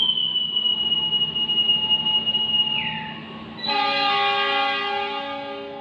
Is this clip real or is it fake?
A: real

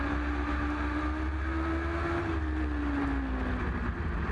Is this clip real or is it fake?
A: real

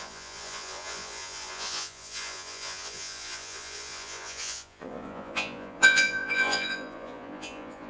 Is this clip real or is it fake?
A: fake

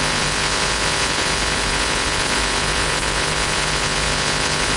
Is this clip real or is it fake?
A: fake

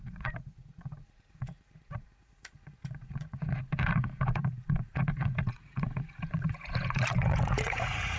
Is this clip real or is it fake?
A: fake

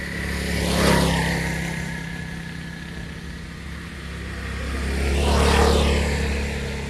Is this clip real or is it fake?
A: real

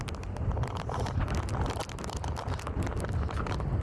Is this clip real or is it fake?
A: real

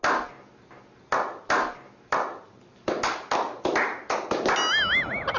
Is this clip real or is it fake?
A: real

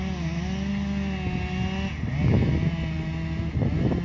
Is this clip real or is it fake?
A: real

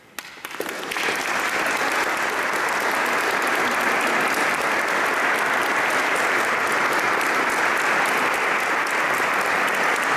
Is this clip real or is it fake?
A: real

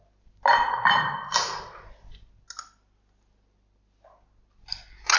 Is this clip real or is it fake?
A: real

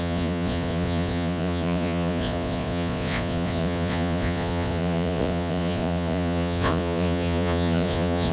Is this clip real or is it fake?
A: fake